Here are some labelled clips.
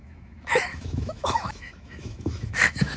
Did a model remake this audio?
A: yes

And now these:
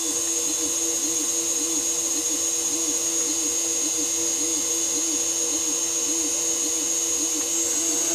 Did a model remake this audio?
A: no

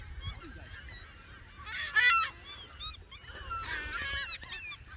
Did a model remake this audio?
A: no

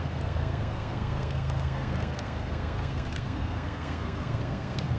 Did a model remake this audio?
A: yes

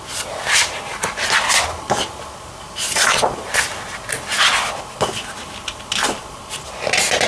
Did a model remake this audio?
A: no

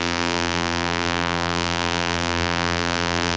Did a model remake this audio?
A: yes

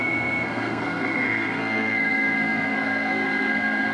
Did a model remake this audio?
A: yes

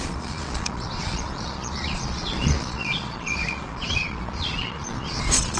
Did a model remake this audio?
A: yes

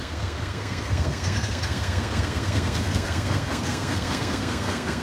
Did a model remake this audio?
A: yes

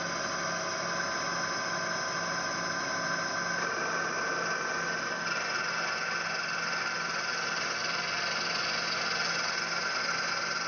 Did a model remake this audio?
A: no